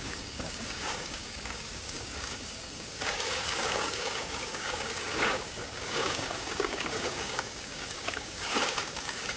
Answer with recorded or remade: remade